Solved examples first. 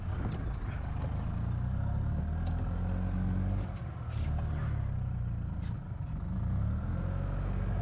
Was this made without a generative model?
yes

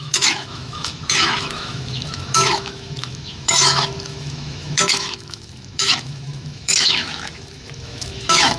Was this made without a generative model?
no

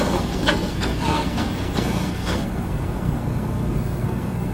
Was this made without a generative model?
no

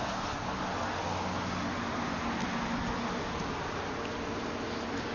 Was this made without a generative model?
yes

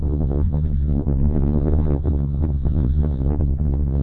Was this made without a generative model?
no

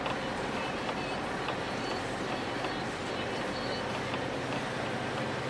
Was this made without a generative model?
yes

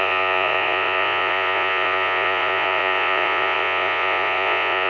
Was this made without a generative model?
no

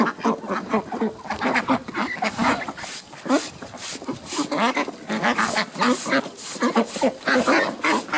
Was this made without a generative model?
yes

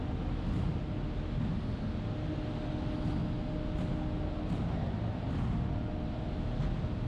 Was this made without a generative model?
yes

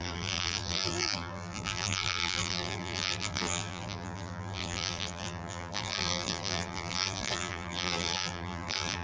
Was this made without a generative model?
no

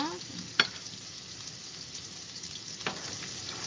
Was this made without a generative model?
yes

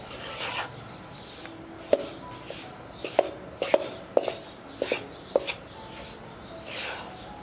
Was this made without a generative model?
yes